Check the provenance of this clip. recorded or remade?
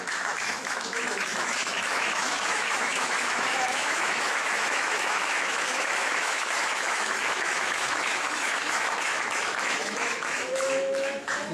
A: remade